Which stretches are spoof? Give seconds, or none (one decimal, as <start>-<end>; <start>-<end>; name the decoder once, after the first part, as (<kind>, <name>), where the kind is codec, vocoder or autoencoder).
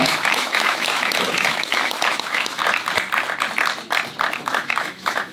0.0-2.6 (autoencoder, DAC-VAE); 4.4-5.3